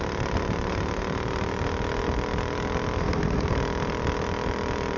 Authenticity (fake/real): real